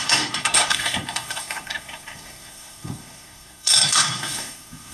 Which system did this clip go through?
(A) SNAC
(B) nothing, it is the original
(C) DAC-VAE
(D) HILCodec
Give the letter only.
A